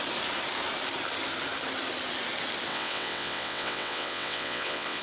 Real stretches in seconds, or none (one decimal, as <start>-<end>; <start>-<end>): 0.0-2.7